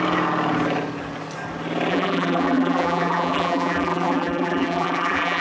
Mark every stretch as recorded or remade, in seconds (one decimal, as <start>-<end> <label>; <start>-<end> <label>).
0.0-1.9 recorded; 1.9-5.4 remade